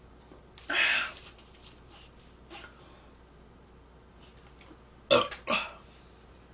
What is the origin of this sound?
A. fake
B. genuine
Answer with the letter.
B